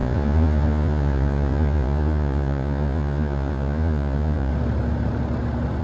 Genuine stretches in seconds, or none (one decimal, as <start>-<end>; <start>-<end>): 4.5-5.8